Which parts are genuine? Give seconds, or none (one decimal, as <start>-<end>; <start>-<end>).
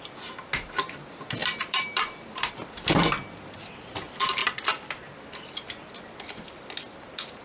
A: 0.0-1.4; 2.5-7.4